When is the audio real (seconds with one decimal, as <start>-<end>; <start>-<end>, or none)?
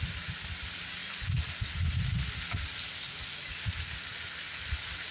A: 0.0-5.1